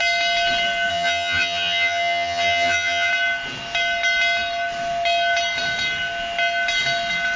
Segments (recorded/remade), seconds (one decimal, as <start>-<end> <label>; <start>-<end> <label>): 0.0-0.9 recorded; 0.9-3.1 remade; 3.1-7.4 recorded

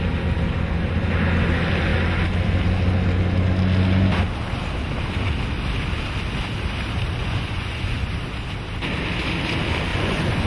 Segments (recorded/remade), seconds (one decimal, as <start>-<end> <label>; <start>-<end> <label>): 0.0-7.2 recorded; 7.2-8.1 remade; 8.1-9.9 recorded; 9.9-10.5 remade